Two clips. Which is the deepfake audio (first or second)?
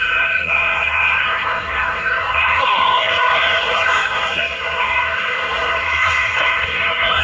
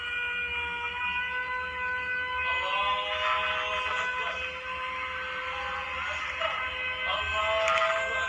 first